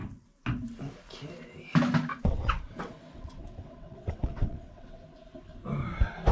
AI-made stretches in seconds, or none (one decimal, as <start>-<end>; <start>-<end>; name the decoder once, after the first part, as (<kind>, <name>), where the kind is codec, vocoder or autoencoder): 2.1-5.0 (vocoder, WaveNeXt)

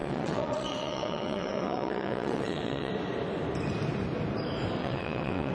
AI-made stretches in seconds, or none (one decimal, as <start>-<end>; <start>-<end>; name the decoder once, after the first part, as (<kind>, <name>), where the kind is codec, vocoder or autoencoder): 0.0-2.9 (vocoder, WaveNeXt); 4.8-5.5

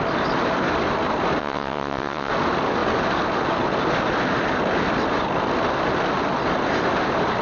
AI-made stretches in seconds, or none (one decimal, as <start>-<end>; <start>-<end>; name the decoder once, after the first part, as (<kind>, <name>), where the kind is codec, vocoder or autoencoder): 1.4-2.3 (vocoder, WaveNeXt)

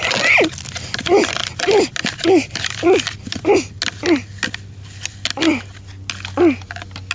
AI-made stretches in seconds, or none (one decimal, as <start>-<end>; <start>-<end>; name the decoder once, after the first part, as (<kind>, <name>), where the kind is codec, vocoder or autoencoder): none

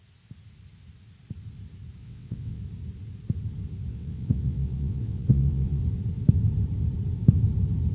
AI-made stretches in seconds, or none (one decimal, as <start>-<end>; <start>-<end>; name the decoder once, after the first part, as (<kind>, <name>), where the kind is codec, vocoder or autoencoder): 2.0-2.6 (vocoder, WaveNeXt); 3.9-5.8

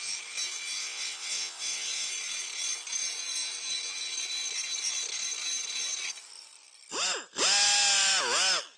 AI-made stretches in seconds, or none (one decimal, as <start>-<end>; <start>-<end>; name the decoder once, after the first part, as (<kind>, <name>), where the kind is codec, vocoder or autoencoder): 0.8-2.1 (vocoder, WaveNeXt)

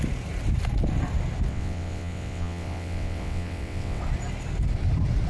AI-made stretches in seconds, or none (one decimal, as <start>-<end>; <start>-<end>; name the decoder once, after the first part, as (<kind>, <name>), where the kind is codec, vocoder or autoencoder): 1.5-4.0 (vocoder, WaveNeXt)